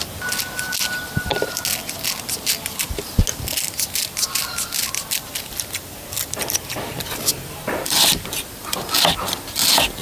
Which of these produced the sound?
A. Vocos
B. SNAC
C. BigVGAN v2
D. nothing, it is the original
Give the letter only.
D